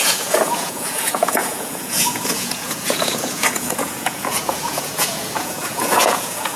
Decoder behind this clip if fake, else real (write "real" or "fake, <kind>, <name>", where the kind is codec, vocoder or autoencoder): fake, vocoder, Vocos